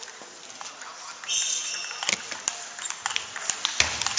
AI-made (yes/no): no